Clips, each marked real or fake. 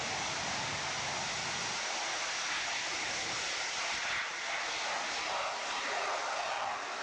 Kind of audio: real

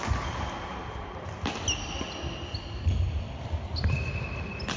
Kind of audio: real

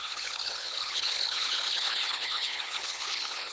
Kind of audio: fake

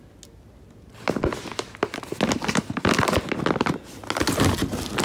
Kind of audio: real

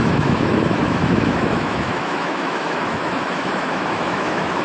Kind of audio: fake